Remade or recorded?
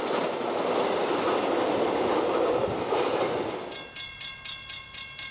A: recorded